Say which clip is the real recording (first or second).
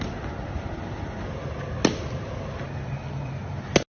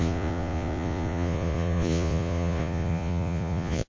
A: first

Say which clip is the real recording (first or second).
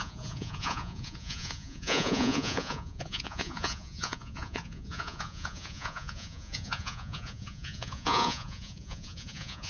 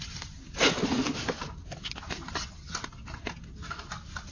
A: second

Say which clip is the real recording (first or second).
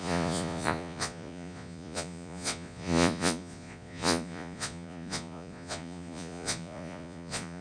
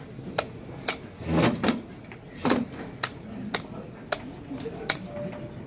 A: second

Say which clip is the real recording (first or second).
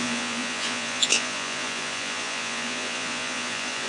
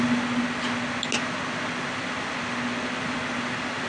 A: second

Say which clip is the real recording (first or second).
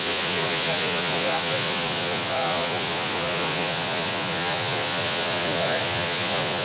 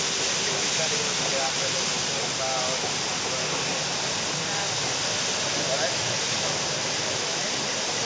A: second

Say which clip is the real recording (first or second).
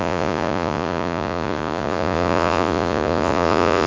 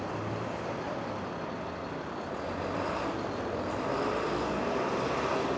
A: second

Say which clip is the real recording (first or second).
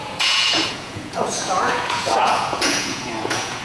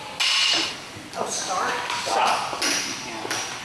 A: second